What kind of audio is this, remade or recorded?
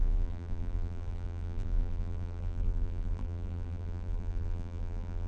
remade